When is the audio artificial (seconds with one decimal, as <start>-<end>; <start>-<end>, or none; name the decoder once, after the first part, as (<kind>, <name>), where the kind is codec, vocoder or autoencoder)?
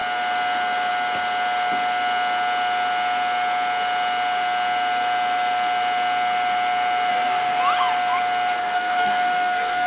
7.1-7.6 (codec, SNAC); 8.6-9.9